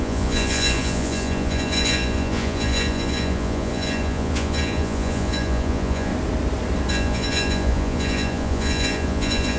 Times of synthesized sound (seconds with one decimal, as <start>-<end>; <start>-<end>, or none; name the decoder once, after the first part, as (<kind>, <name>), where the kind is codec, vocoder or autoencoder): 0.0-6.1 (vocoder, Vocos); 6.9-9.6